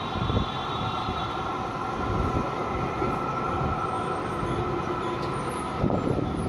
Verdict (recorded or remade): recorded